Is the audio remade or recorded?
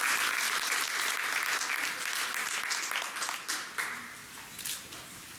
recorded